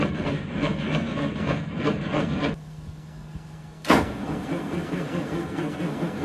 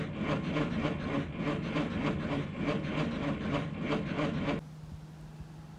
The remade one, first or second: first